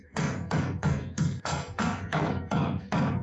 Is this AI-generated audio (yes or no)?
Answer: yes